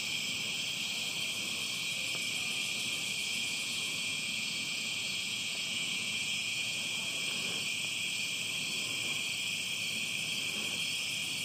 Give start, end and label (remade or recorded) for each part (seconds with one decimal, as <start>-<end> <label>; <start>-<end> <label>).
0.0-3.2 recorded; 3.2-8.1 remade; 8.1-11.4 recorded